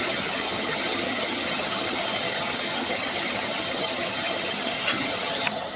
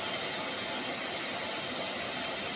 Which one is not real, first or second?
first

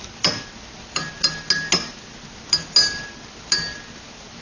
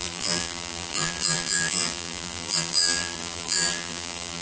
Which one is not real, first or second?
second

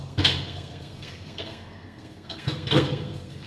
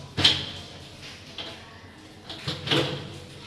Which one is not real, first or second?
first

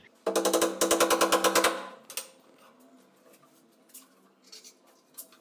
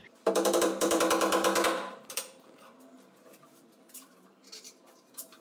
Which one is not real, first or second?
second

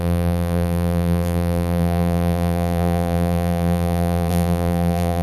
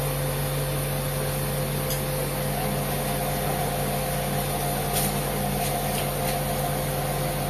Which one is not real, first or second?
first